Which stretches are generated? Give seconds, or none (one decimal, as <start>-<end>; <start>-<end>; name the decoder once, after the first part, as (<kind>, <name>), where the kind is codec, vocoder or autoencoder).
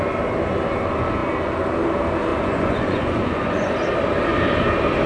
2.3-3.7 (vocoder, Vocos)